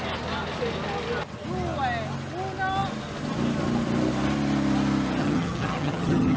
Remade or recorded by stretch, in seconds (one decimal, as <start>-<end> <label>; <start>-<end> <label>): 0.0-5.2 recorded; 5.2-6.4 remade